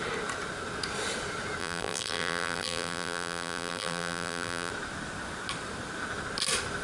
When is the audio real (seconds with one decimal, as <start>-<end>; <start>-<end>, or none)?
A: 0.0-1.6; 4.7-6.8